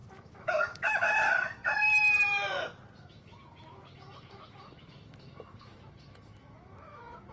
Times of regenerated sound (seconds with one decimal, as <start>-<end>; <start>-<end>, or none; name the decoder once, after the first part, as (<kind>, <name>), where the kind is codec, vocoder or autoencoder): 0.0-1.6 (autoencoder, DAC-VAE); 3.0-7.3